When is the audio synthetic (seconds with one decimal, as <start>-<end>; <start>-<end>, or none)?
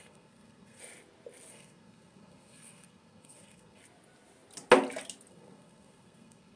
0.0-0.8; 1.5-3.8; 5.3-6.6